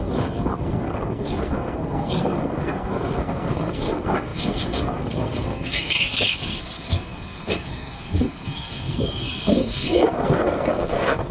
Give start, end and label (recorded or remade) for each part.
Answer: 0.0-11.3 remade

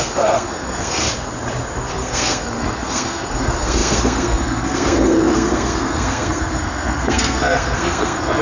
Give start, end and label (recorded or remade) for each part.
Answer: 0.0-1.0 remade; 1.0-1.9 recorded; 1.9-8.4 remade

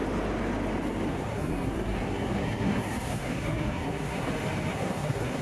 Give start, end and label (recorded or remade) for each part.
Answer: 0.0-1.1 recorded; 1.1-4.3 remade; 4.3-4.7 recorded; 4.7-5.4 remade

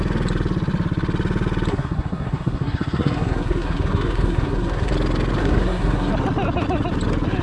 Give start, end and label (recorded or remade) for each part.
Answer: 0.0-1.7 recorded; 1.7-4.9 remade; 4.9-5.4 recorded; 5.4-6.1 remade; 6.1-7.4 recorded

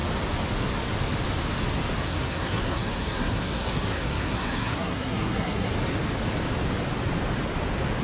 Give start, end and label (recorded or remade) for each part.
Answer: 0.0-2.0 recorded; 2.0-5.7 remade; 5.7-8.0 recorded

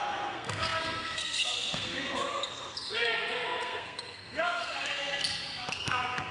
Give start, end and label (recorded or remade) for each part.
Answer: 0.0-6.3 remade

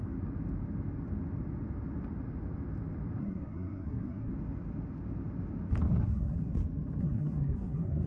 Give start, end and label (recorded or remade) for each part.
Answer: 0.0-3.2 recorded; 3.2-4.3 remade; 4.3-6.0 recorded; 6.0-6.5 remade; 6.5-7.0 recorded; 7.0-8.1 remade

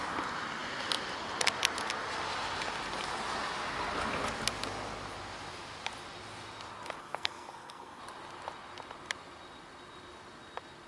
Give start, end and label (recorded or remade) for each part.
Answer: 0.0-7.0 recorded; 7.0-8.0 remade; 8.0-10.9 recorded